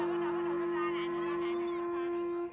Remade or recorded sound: recorded